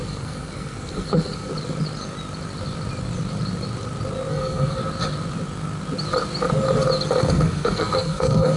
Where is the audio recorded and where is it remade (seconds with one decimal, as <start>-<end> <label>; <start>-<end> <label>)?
0.0-1.5 remade; 1.5-4.3 recorded; 4.3-4.8 remade; 4.8-7.2 recorded; 7.2-8.6 remade